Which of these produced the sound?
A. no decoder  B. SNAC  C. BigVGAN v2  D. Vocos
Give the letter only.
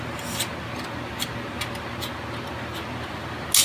A